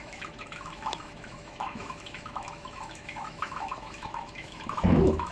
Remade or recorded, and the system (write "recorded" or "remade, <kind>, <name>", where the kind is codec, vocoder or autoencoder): remade, autoencoder, DAC-VAE